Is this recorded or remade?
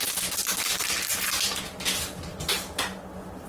recorded